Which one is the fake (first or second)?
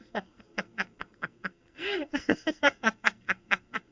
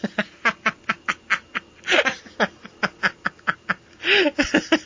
first